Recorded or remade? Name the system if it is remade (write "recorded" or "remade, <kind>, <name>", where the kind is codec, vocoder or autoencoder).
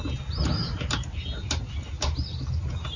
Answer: recorded